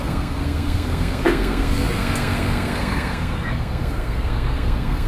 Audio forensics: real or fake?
fake